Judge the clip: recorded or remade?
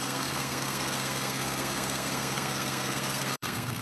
remade